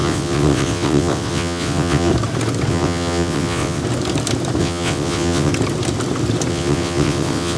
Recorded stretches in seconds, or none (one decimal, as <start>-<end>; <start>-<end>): 2.1-2.7; 3.8-4.6; 5.5-6.5